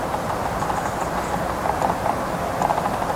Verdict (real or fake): real